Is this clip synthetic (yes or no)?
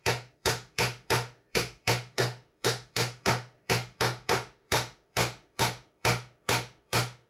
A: yes